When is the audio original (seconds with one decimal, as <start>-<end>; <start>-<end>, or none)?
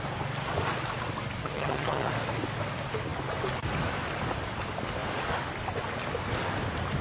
0.0-1.4; 2.1-7.0